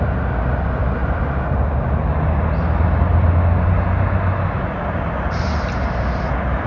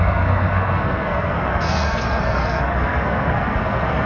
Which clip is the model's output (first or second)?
second